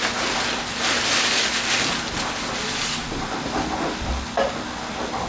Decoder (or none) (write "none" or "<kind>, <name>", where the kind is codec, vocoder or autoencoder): none